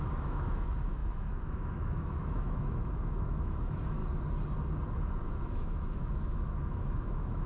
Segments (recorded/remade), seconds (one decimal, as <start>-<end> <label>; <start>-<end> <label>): 0.0-4.0 remade; 4.0-5.4 recorded; 5.4-7.5 remade